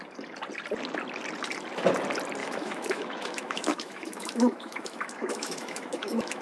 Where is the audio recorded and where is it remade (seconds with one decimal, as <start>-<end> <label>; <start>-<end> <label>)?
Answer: 0.0-2.4 recorded; 2.4-6.4 remade